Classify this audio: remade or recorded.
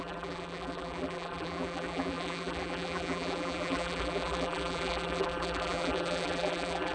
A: remade